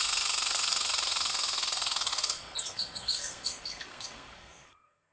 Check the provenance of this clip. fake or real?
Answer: fake